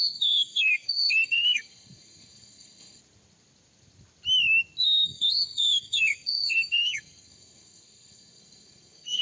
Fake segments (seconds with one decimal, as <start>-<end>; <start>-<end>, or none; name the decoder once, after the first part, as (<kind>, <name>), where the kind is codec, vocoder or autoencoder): 0.0-3.0 (codec, SNAC); 4.8-9.2